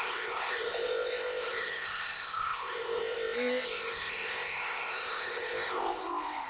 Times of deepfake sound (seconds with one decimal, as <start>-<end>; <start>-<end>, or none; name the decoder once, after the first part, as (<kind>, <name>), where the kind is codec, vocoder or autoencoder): 0.0-6.5 (codec, ZipCodec)